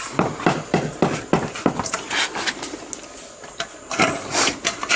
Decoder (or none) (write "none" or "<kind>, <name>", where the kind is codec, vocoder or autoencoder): none